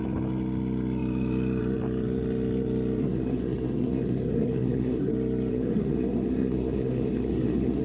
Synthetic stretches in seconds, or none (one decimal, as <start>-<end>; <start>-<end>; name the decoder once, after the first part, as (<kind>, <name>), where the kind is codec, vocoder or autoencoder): 3.0-5.1 (codec, SNAC); 5.5-7.8